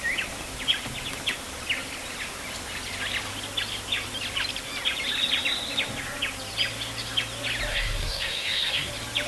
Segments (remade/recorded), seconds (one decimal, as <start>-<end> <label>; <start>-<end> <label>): 0.0-7.7 recorded; 7.7-8.9 remade; 8.9-9.3 recorded